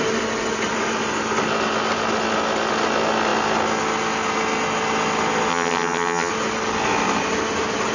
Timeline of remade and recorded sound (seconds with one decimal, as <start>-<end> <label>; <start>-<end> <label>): 0.0-5.5 recorded; 5.5-6.3 remade; 6.3-7.9 recorded